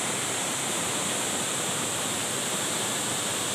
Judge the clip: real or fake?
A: fake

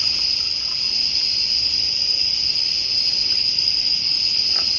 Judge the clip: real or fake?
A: real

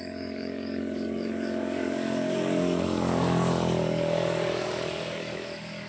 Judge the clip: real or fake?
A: fake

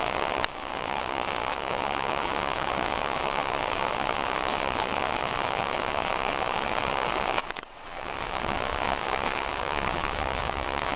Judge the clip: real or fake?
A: fake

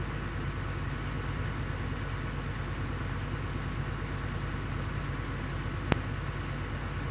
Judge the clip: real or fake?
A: real